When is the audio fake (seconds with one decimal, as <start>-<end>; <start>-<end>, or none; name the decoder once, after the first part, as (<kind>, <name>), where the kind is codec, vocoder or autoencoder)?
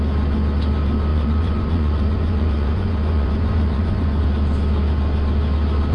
1.1-4.2 (vocoder, Vocos)